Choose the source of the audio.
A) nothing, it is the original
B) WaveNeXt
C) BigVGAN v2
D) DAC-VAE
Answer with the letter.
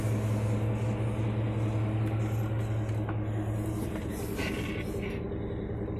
A